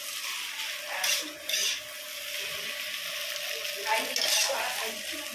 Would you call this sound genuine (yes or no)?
yes